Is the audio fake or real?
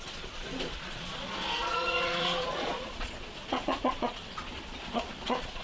fake